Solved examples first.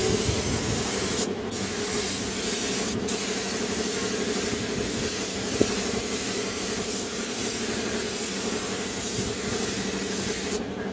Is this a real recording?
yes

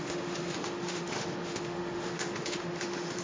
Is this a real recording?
no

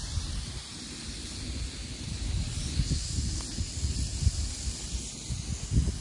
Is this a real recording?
yes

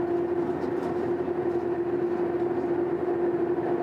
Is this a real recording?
yes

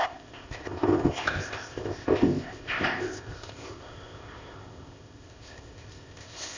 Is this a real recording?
no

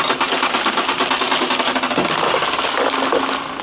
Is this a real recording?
yes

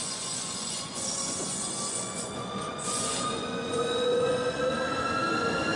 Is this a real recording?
no